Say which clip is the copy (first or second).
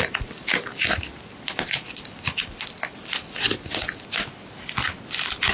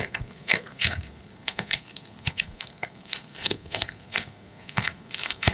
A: second